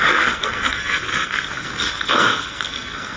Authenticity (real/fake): fake